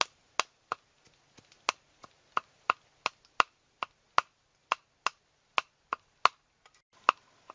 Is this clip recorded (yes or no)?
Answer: yes